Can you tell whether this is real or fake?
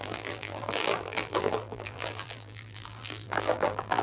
fake